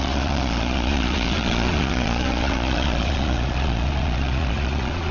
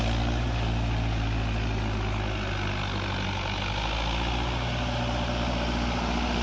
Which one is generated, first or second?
first